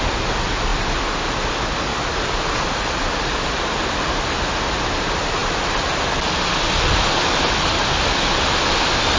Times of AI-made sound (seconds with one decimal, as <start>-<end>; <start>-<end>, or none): 1.9-4.6; 5.4-6.5